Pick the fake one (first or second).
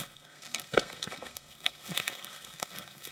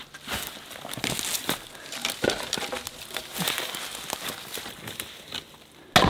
first